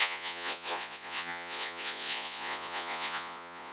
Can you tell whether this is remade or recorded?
remade